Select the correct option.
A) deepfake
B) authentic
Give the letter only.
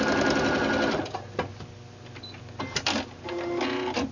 B